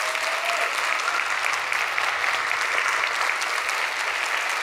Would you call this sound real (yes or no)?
yes